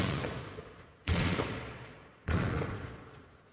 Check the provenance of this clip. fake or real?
fake